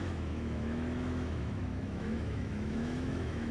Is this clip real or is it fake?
fake